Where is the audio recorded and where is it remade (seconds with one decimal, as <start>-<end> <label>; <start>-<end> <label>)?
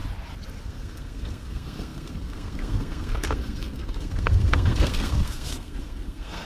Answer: 0.0-0.6 recorded; 0.6-6.5 remade